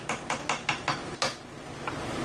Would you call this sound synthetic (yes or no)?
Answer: no